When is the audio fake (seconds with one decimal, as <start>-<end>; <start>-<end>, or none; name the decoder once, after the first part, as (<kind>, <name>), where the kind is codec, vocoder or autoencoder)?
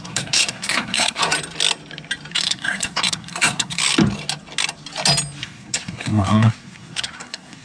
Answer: 0.0-1.2 (codec, SNAC); 2.3-3.8; 5.4-7.6